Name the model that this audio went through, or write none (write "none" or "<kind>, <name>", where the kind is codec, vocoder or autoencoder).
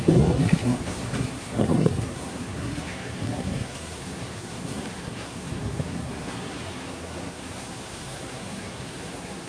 codec, SNAC